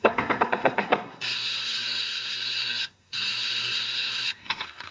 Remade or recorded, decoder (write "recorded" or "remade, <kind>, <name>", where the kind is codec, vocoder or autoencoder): remade, codec, SNAC